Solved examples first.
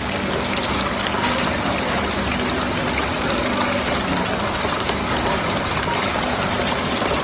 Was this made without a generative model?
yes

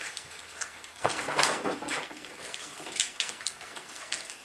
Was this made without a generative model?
no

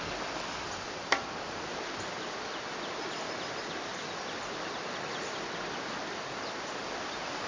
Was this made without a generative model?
yes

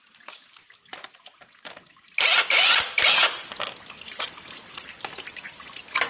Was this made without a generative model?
yes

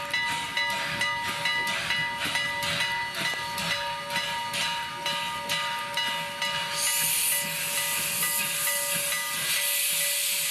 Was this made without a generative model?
yes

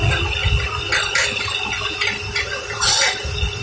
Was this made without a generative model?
yes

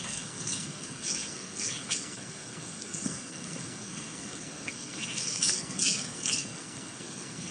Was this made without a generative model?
no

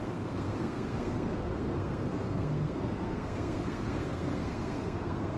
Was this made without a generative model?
no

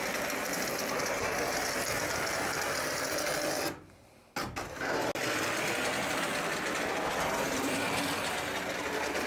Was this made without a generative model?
yes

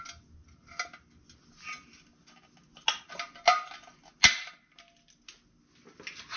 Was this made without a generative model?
yes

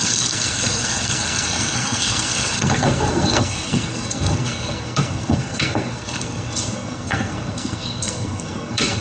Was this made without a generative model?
no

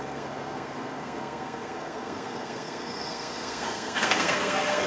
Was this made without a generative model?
no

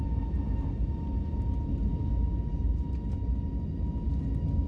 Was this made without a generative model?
yes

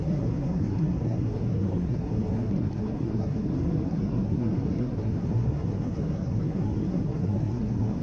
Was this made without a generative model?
no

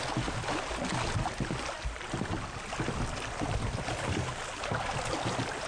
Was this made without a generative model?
yes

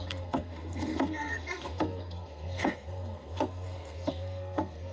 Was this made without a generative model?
no